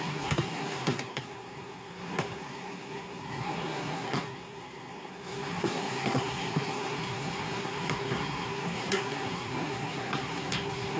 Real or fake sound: fake